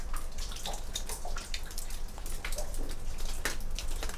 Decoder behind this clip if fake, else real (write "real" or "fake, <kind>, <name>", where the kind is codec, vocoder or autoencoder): real